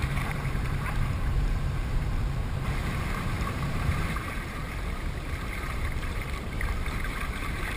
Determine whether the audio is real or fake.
fake